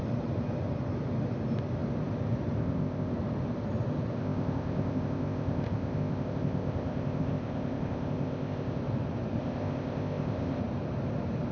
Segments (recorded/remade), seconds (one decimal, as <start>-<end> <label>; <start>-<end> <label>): 0.0-2.6 recorded; 2.6-3.1 remade; 3.1-4.2 recorded; 4.2-8.8 remade; 8.8-9.4 recorded; 9.4-10.6 remade; 10.6-11.5 recorded